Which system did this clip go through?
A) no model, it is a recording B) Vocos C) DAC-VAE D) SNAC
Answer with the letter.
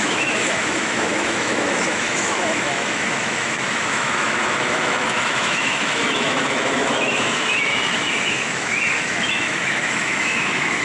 C